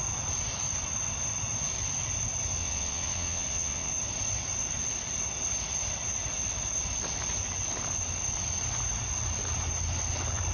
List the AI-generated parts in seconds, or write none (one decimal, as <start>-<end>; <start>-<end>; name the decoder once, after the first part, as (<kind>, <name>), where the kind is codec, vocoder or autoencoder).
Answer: 2.6-3.9 (vocoder, WaveNeXt)